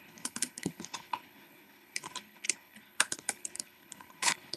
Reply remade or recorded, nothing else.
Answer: remade